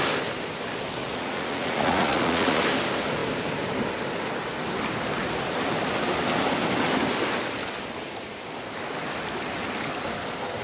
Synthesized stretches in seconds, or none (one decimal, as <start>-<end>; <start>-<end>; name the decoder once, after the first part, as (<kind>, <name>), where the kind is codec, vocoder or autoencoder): 1.0-2.6 (vocoder, Vocos)